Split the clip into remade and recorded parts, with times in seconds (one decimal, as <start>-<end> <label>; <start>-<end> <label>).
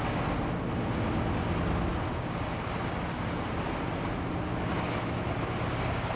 0.0-4.5 recorded; 4.5-5.3 remade; 5.3-6.2 recorded